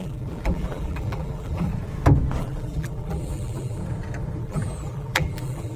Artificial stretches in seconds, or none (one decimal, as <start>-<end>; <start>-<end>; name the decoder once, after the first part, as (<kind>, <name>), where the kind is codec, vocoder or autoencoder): 0.0-1.7 (vocoder, BigVGAN v2); 2.4-3.8; 4.4-5.8